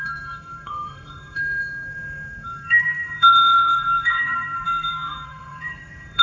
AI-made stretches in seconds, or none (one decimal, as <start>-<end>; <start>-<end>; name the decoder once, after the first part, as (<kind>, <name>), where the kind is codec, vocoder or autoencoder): 0.0-6.2 (codec, SNAC)